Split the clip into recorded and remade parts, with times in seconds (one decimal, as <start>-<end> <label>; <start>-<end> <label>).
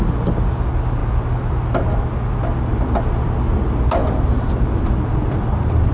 0.0-5.9 recorded